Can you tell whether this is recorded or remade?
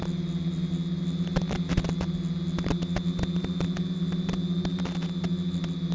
recorded